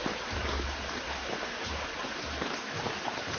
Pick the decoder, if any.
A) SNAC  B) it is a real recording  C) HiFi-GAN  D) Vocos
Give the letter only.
B